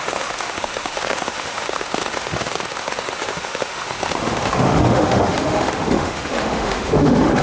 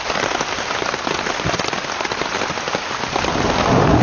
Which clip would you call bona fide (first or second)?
second